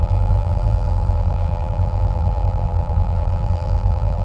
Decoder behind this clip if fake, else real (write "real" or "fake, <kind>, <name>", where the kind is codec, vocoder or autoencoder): fake, vocoder, BigVGAN v2